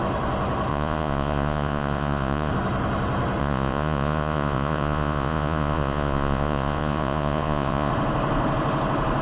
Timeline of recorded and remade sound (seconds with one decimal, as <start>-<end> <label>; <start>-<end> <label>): 0.0-0.7 recorded; 0.7-2.5 remade; 2.5-3.4 recorded; 3.4-7.9 remade; 7.9-9.2 recorded